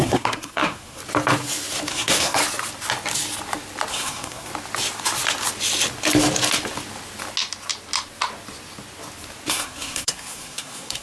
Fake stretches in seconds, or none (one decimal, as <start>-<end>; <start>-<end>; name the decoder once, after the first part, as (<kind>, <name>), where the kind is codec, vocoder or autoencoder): 0.0-1.0 (codec, SNAC); 1.9-2.4; 3.9-4.5; 9.5-11.0